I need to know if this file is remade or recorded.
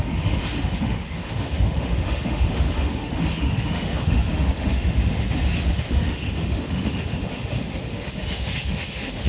remade